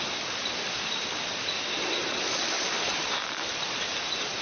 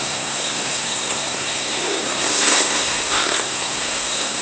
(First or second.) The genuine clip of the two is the first